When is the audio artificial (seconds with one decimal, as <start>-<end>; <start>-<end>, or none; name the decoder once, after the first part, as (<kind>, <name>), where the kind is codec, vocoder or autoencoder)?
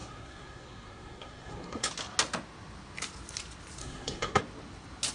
0.0-1.9 (codec, SNAC); 3.8-4.4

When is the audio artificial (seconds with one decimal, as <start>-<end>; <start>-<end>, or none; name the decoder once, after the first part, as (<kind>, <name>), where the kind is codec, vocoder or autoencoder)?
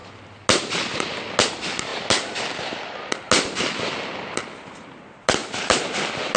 none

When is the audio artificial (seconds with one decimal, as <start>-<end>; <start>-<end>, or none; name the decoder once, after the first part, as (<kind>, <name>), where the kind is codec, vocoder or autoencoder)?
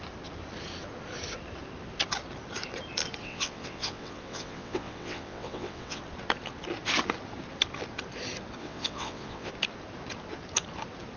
3.2-6.0 (vocoder, WaveNeXt); 8.6-9.5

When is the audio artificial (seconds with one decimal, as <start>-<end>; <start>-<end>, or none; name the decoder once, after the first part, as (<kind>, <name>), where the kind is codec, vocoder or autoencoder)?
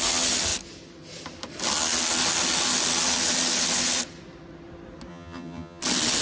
5.1-5.8 (vocoder, HiFi-GAN)